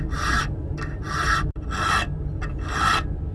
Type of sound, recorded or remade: recorded